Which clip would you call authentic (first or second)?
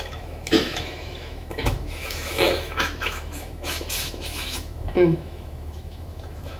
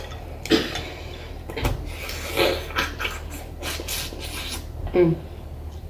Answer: second